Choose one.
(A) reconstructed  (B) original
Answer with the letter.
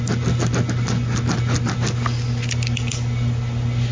B